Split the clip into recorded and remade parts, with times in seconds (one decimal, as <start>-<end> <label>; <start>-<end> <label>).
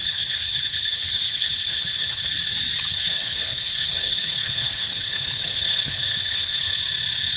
0.0-2.3 remade; 2.3-2.9 recorded; 2.9-6.8 remade; 6.8-7.4 recorded